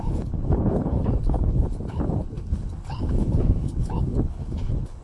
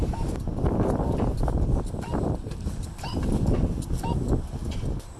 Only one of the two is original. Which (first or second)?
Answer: second